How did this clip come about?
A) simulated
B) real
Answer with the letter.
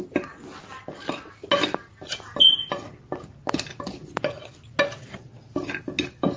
B